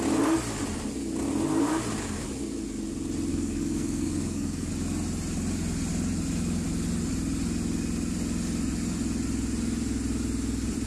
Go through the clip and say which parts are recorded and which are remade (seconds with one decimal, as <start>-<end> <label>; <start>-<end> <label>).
0.0-3.3 recorded; 3.3-4.7 remade; 4.7-10.9 recorded